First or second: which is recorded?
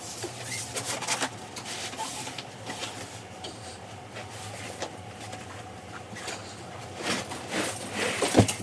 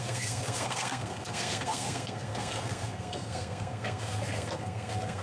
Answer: first